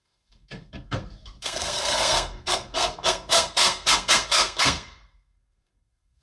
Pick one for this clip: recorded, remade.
remade